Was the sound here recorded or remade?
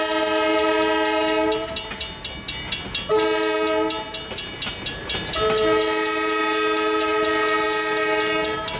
recorded